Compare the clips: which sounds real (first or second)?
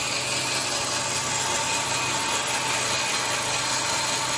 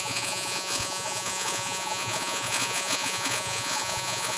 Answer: first